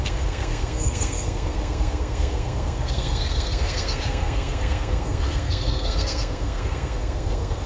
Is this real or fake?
fake